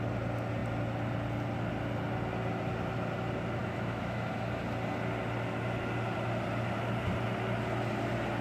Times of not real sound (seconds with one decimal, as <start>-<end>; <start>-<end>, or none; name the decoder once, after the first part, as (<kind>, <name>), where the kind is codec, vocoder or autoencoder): 3.6-4.3 (autoencoder, DAC-VAE)